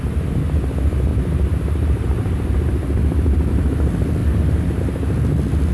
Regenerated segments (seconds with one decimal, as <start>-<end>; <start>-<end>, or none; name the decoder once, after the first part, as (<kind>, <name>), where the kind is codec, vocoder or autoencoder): none